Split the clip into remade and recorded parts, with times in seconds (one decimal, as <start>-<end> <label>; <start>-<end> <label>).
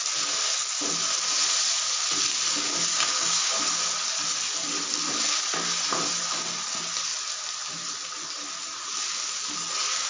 0.0-2.9 recorded; 2.9-3.6 remade; 3.6-10.1 recorded